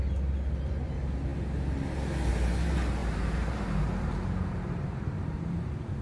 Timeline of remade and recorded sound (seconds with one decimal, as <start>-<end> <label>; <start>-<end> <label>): 0.0-3.0 recorded; 3.0-6.0 remade